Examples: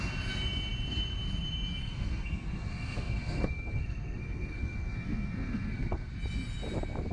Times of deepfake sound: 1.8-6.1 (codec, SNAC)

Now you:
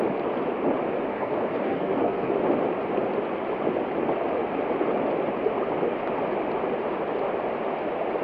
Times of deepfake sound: 1.1-2.3 (codec, SNAC)